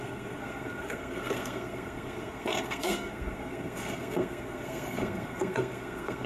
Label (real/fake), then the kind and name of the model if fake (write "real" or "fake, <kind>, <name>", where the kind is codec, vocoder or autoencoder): fake, codec, SNAC